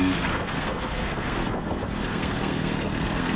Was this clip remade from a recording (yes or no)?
yes